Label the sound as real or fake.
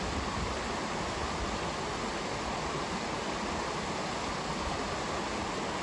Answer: real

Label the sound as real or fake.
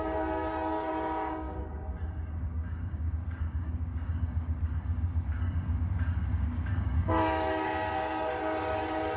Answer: fake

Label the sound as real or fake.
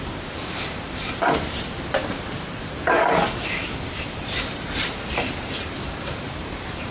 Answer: fake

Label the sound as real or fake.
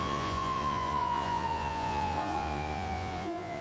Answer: fake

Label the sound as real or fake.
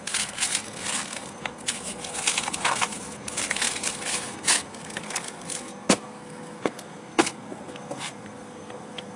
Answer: fake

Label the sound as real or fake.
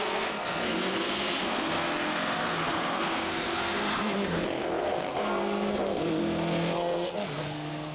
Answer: fake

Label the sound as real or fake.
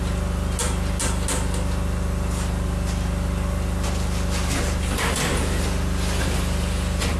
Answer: real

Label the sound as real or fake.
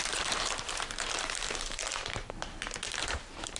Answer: fake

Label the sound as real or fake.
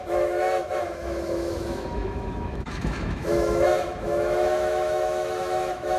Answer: fake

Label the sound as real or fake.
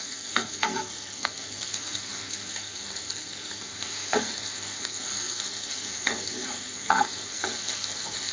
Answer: fake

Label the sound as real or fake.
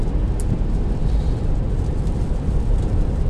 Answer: real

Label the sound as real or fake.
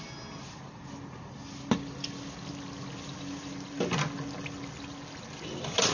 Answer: real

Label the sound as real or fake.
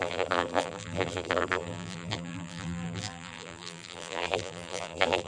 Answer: fake